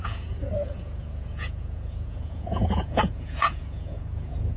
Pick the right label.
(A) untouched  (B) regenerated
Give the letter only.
B